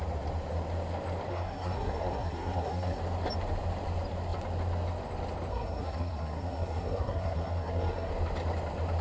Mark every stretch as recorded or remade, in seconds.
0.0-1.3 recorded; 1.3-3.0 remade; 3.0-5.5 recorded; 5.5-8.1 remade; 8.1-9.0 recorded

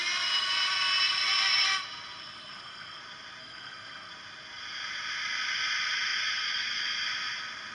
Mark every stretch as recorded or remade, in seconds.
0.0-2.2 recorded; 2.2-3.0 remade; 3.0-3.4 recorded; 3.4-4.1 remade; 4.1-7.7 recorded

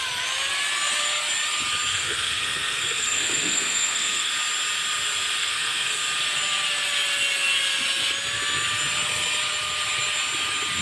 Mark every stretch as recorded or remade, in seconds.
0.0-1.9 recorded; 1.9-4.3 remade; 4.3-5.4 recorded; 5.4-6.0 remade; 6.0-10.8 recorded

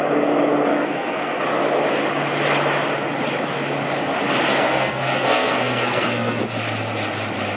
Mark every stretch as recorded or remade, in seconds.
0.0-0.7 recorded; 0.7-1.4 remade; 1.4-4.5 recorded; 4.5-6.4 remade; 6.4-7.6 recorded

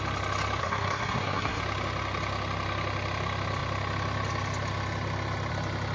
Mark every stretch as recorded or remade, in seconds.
0.0-0.6 recorded; 0.6-1.6 remade; 1.6-5.9 recorded

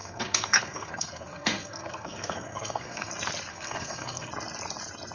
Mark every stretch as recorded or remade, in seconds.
0.0-3.1 remade; 3.1-3.5 recorded; 3.5-4.3 remade; 4.3-5.1 recorded

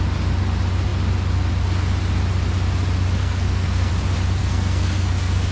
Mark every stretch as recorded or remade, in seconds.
0.0-3.2 recorded; 3.2-3.9 remade; 3.9-4.4 recorded; 4.4-5.5 remade